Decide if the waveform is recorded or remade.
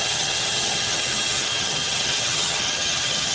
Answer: remade